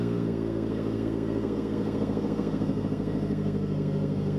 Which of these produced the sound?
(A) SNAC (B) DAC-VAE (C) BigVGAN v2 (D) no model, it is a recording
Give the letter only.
A